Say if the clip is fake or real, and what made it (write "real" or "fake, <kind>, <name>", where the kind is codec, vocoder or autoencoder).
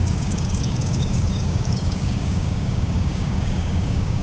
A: fake, codec, DAC